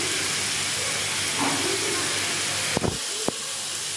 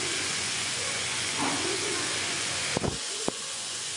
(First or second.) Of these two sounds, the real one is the first